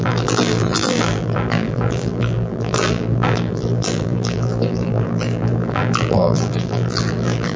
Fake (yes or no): yes